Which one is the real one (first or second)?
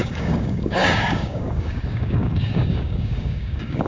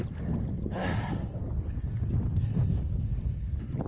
second